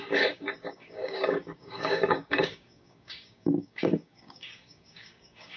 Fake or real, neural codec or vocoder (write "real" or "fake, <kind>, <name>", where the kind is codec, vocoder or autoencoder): fake, codec, DAC